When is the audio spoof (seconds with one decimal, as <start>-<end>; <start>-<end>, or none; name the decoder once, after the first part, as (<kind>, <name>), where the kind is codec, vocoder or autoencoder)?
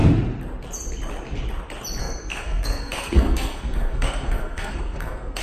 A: 2.0-5.4 (codec, SNAC)